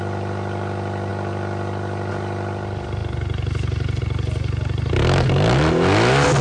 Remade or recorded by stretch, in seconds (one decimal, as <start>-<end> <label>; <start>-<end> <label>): 0.0-6.4 recorded